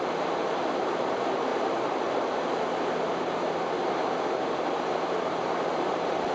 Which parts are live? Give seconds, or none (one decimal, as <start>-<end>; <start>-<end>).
1.5-5.3